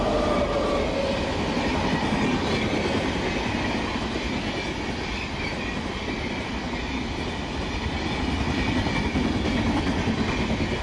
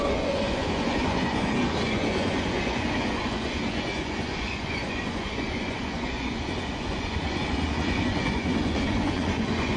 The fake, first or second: second